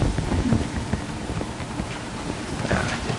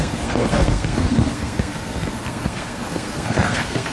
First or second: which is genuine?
first